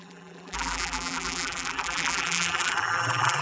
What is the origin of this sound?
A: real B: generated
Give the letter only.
B